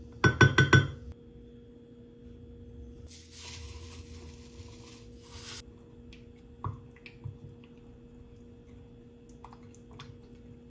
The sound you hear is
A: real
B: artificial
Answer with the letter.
A